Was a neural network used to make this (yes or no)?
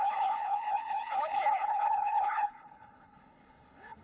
yes